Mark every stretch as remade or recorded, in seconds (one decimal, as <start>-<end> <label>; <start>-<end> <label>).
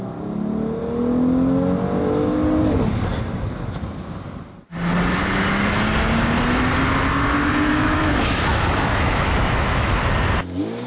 0.0-7.7 recorded; 7.7-10.0 remade; 10.0-10.9 recorded